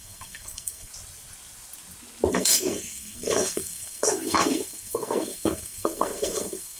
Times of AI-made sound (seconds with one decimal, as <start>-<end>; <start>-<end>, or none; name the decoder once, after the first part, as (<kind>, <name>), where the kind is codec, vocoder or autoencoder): 0.0-0.9 (codec, SNAC); 2.3-6.8